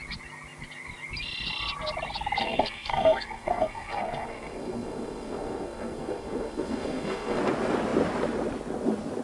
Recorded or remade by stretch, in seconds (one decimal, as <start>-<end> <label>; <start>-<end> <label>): 0.0-2.4 recorded; 2.4-7.4 remade; 7.4-9.2 recorded